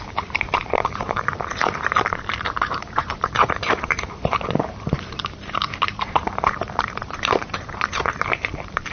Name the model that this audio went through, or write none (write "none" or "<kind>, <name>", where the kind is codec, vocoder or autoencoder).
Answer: vocoder, BigVGAN v2